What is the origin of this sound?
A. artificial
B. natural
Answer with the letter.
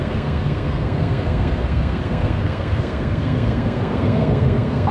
A